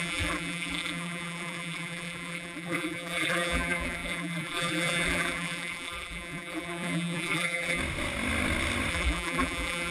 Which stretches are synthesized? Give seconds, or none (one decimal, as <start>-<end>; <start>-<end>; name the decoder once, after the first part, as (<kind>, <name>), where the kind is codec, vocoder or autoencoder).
0.0-7.8 (vocoder, BigVGAN v2); 8.9-9.9